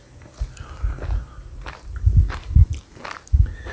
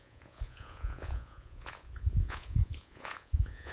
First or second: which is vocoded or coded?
second